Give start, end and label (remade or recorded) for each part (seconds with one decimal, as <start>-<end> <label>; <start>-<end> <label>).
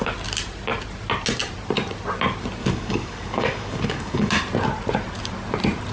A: 0.0-2.6 recorded; 2.6-4.3 remade; 4.3-5.9 recorded